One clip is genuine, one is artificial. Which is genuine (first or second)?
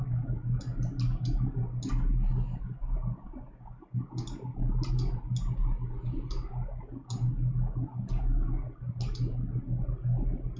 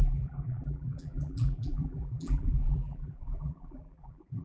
first